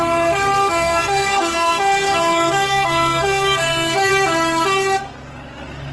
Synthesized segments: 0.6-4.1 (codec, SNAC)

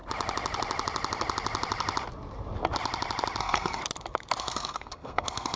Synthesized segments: 3.4-3.8 (codec, SNAC); 4.4-5.6

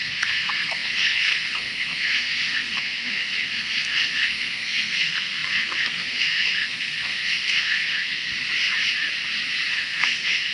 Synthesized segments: 0.0-8.3 (codec, SNAC); 9.7-10.5

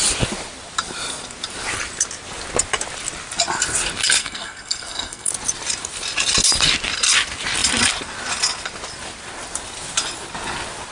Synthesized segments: 4.2-5.3 (codec, SNAC)

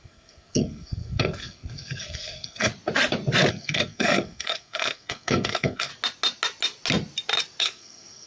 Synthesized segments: 0.0-2.7 (codec, SNAC); 3.5-5.9; 7.6-8.3

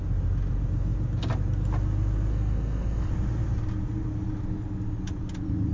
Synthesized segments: 2.3-3.1 (codec, SNAC)

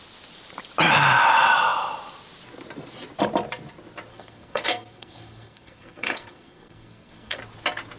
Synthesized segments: 4.1-7.4 (codec, SNAC)